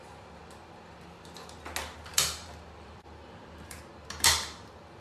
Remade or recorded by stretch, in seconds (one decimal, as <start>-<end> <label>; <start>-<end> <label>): 0.0-2.1 recorded; 2.1-3.8 remade; 3.8-5.0 recorded

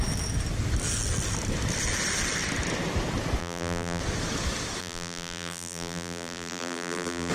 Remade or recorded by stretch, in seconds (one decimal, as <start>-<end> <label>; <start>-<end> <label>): 0.0-3.4 recorded; 3.4-4.0 remade; 4.0-4.8 recorded; 4.8-7.3 remade

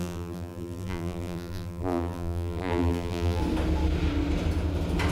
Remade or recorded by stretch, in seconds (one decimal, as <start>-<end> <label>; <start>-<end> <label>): 0.0-3.4 remade; 3.4-5.1 recorded

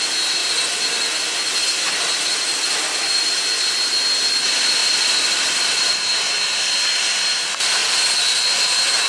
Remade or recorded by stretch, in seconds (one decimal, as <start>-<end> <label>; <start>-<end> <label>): 0.0-0.4 recorded; 0.4-3.4 remade; 3.4-4.8 recorded; 4.8-6.1 remade; 6.1-9.1 recorded

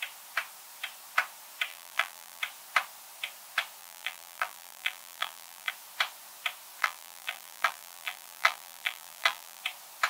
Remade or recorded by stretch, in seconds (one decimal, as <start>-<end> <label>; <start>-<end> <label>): 0.0-1.7 recorded; 1.7-2.4 remade; 2.4-3.8 recorded; 3.8-5.7 remade; 5.7-6.8 recorded; 6.8-9.6 remade; 9.6-10.1 recorded

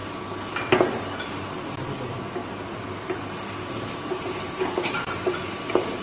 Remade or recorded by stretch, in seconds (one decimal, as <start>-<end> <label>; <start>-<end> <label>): 0.0-2.4 recorded; 2.4-5.4 remade; 5.4-6.0 recorded

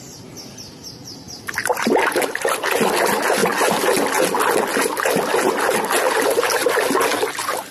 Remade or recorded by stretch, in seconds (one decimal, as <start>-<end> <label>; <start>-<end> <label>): 0.0-7.7 recorded

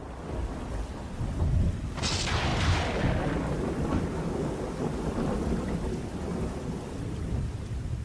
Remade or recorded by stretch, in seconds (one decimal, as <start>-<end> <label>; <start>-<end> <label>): 0.0-8.0 recorded